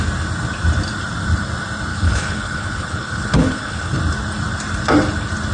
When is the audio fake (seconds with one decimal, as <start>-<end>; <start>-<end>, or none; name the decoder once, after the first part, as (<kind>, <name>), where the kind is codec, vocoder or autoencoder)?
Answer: 1.9-4.0 (codec, HILCodec)